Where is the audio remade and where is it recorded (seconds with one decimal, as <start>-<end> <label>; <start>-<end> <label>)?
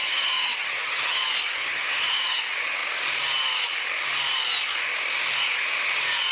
0.0-1.2 remade; 1.2-1.6 recorded; 1.6-2.4 remade; 2.4-6.3 recorded